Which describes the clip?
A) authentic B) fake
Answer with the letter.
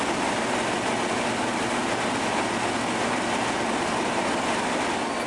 A